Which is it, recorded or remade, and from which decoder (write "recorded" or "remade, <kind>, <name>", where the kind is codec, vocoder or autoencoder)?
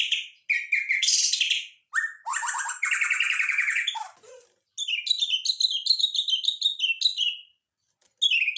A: recorded